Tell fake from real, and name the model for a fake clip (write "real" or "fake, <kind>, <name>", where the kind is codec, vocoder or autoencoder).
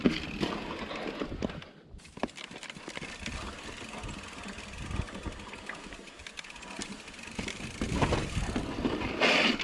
real